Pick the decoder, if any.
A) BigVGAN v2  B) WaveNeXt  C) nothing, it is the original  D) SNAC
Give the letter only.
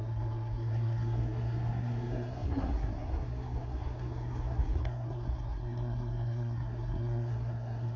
D